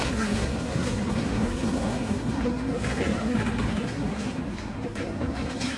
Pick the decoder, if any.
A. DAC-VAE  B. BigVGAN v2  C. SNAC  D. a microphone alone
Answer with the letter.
C